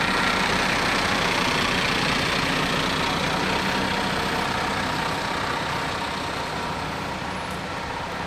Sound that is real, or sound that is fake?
real